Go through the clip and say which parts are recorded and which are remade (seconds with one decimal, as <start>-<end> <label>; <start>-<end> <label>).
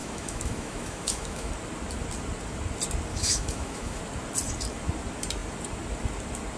0.0-1.5 remade; 1.5-3.1 recorded; 3.1-4.0 remade; 4.0-6.6 recorded